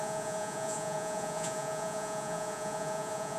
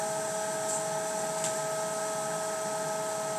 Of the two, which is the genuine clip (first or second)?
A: second